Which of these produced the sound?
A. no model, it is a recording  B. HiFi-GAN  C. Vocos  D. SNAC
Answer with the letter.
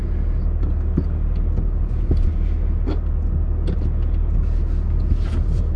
A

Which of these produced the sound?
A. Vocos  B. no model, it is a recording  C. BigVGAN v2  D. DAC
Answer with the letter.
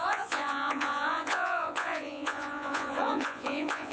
A